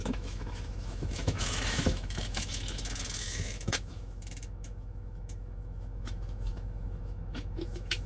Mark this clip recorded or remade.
remade